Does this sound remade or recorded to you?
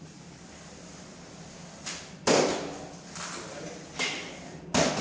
recorded